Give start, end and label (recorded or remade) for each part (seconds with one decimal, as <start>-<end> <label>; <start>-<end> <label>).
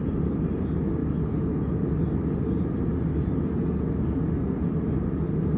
0.0-5.6 recorded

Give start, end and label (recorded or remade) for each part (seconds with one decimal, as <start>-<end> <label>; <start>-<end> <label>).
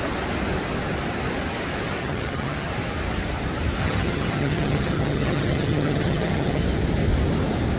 0.0-2.0 recorded; 2.0-2.7 remade; 2.7-3.8 recorded; 3.8-6.6 remade; 6.6-7.8 recorded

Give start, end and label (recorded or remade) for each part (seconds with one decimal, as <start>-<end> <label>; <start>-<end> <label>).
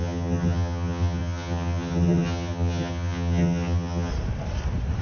0.0-4.1 remade; 4.1-5.0 recorded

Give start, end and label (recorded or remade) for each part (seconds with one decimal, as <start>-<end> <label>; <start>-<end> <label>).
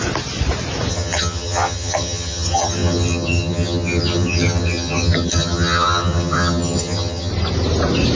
0.0-0.9 recorded; 0.9-7.3 remade; 7.3-8.2 recorded